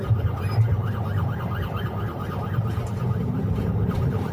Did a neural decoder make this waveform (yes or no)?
yes